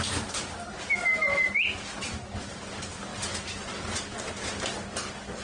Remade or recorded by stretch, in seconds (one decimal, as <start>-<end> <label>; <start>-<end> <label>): 0.0-5.4 recorded